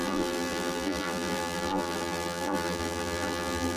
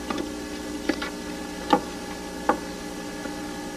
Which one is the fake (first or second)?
first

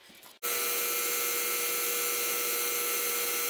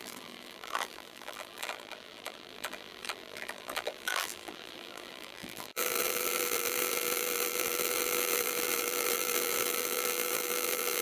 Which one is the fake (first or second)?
second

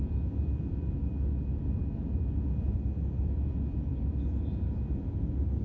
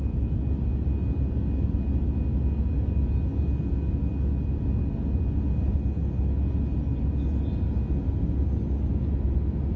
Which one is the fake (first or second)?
first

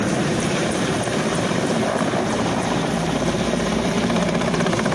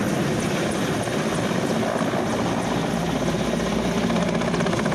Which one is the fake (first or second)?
first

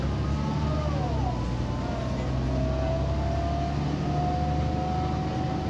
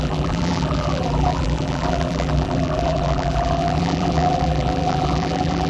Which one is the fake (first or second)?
second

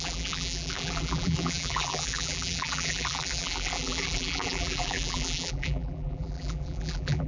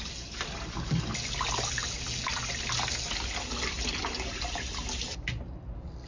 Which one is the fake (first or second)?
first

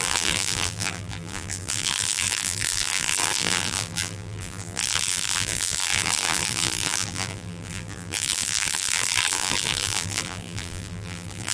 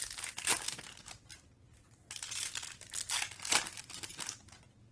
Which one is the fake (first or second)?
first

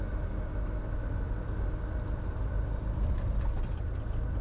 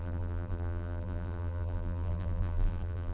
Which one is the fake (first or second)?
second